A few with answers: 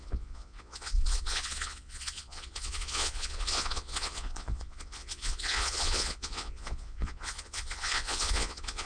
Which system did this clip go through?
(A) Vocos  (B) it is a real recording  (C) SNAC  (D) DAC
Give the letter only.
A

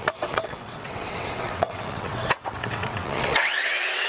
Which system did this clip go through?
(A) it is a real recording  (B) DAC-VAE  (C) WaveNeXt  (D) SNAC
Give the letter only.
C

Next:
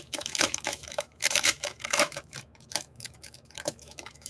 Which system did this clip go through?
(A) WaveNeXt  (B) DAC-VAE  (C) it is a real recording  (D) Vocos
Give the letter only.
B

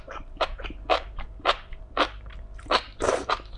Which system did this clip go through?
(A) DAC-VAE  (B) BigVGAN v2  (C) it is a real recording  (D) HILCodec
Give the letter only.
B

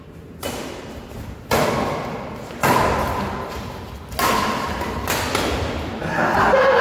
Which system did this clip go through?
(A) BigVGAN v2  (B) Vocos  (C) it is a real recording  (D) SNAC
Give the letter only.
C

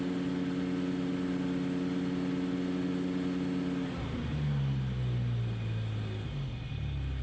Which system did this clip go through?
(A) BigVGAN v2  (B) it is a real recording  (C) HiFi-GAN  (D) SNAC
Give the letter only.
B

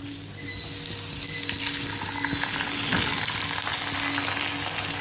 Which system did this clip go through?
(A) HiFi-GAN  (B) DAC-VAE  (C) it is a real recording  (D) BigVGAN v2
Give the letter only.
C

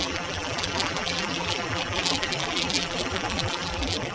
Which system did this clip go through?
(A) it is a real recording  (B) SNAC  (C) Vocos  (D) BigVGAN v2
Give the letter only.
D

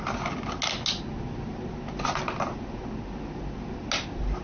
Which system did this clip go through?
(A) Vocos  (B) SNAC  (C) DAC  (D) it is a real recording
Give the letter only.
D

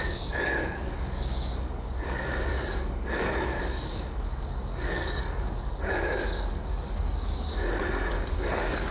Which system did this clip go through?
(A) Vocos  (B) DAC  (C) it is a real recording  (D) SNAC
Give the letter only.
B